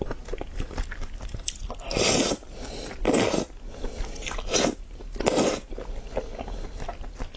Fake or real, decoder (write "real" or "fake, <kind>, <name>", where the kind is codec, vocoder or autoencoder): real